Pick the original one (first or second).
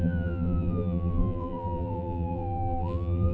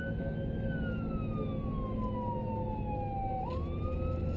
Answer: second